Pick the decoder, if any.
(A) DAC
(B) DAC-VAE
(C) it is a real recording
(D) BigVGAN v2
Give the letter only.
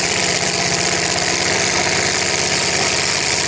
D